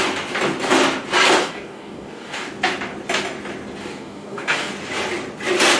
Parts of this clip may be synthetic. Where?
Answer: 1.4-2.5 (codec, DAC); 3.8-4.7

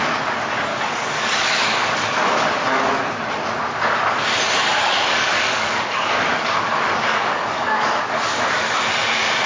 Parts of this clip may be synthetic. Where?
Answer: 0.7-3.0 (codec, DAC); 4.8-8.5

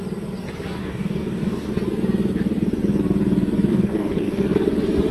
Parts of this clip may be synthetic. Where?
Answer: 0.8-1.7 (codec, DAC); 3.7-4.4

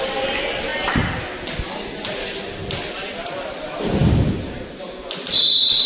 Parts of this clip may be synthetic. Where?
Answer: none

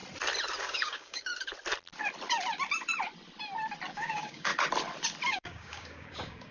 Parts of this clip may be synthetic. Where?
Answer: 0.6-1.3 (codec, DAC); 3.9-4.5; 5.3-6.5

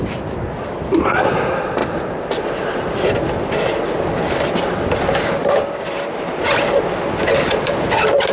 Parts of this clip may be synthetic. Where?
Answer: none

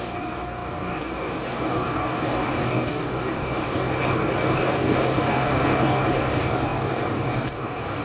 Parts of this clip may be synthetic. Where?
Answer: 0.0-8.0 (codec, DAC)